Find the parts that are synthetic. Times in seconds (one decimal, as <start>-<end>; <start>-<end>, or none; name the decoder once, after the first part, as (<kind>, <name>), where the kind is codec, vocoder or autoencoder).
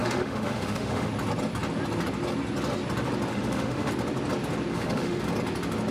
0.0-1.1 (autoencoder, DAC-VAE); 3.3-3.9; 4.7-5.2